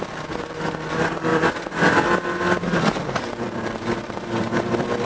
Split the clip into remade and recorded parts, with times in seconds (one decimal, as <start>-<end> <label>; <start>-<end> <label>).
0.0-1.3 recorded; 1.3-1.9 remade; 1.9-3.0 recorded; 3.0-5.1 remade